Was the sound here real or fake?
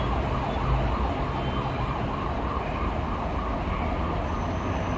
real